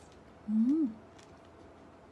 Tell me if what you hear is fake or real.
real